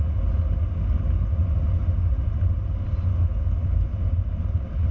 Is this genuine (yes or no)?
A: yes